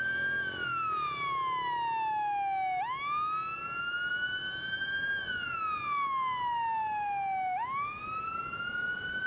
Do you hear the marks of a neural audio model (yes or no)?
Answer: no